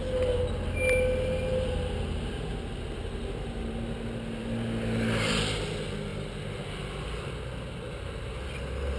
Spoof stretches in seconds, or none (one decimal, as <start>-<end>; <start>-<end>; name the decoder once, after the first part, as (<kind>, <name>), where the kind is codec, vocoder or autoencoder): none